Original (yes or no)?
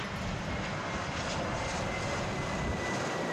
yes